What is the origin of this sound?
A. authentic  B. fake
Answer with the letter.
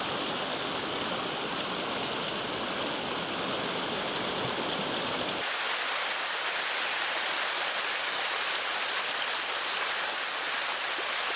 A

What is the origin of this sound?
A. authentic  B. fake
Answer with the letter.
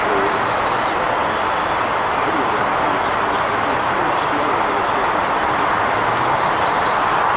A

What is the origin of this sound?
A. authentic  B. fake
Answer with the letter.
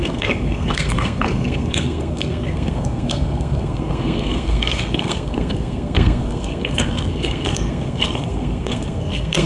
B